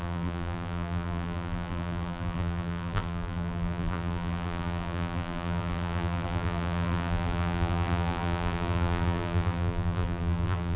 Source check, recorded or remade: remade